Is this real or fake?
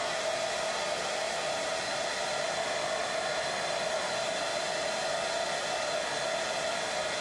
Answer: real